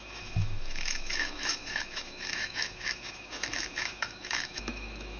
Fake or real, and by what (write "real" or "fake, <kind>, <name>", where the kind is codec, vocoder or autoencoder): fake, autoencoder, DAC-VAE